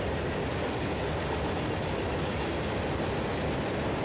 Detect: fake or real real